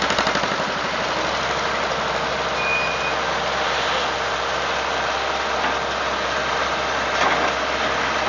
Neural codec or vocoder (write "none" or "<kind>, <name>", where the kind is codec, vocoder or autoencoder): none